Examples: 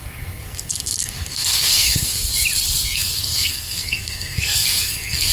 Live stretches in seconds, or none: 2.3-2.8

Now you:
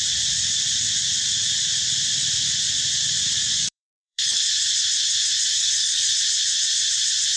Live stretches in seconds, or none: 0.0-3.5; 4.4-5.5; 6.1-7.4

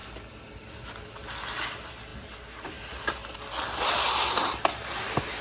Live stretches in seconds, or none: 0.0-5.4

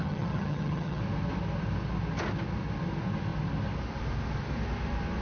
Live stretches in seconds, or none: 1.0-5.2

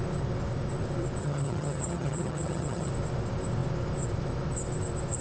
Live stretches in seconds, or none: 0.0-1.2; 2.9-5.2

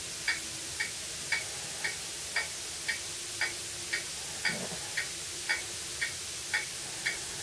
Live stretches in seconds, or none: 0.0-7.4